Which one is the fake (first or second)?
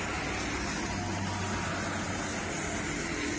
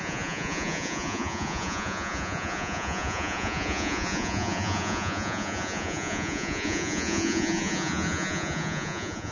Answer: second